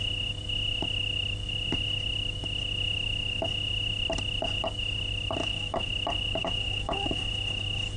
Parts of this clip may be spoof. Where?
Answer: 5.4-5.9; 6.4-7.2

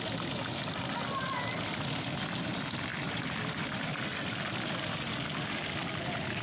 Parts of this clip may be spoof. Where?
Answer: none

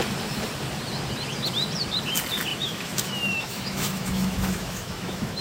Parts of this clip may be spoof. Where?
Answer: 2.5-5.4

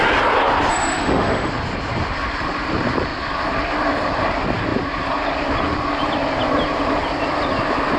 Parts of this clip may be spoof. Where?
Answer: 0.7-1.5

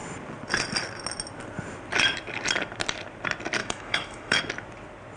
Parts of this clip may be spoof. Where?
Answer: 3.6-4.4

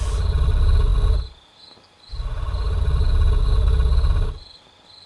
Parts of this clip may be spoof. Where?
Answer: none

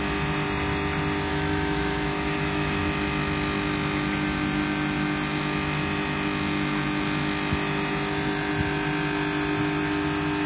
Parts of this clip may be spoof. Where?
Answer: 1.3-2.8

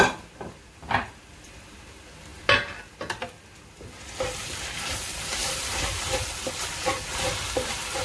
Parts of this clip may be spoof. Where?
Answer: none